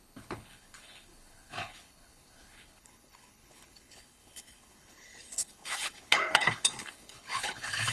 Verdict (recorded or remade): remade